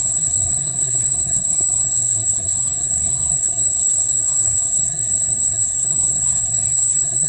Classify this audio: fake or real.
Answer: fake